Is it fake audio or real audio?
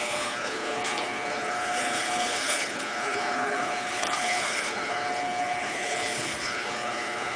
fake